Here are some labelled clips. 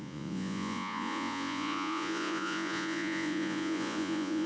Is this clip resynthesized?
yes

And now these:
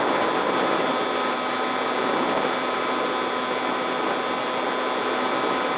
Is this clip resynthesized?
no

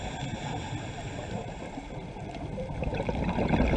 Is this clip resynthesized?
yes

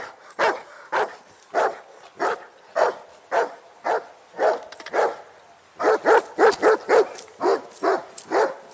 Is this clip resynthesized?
no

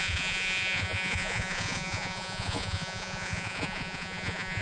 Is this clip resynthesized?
yes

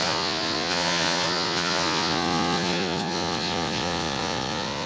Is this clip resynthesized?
yes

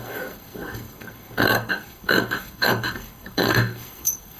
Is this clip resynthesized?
yes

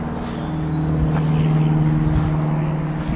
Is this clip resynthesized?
no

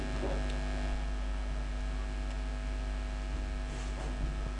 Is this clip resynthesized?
no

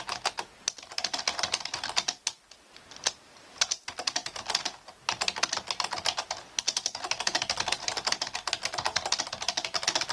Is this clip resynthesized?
no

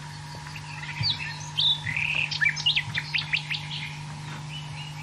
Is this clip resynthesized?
no